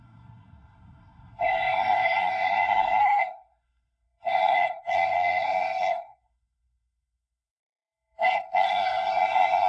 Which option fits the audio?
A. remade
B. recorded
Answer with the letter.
A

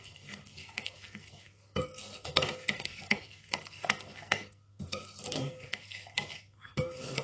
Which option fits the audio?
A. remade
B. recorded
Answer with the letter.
A